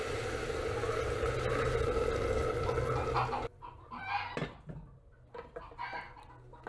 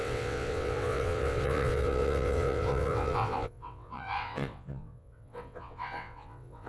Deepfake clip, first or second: second